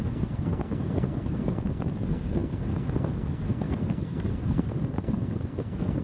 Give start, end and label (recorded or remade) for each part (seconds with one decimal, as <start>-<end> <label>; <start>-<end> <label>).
0.0-6.0 remade